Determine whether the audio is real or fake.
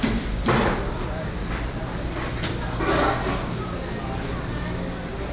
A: real